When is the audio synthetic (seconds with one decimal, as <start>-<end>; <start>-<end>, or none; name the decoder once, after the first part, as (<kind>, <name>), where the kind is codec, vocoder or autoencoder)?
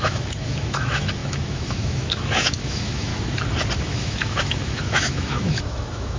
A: 0.0-3.1 (autoencoder, DAC-VAE); 3.8-6.2